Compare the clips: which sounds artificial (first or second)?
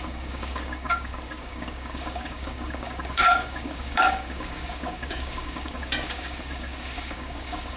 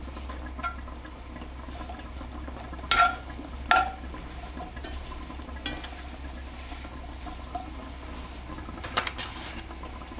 first